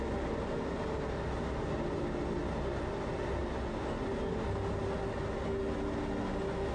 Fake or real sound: real